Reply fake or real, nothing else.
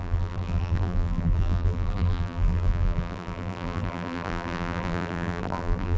fake